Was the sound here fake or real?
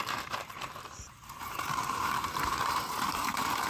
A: fake